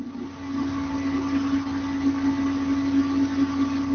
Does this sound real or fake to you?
real